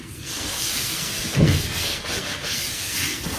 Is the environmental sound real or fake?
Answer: fake